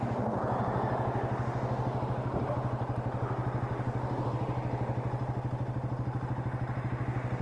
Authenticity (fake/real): real